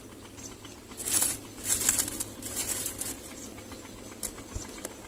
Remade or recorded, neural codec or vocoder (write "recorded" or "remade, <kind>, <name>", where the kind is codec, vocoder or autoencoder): recorded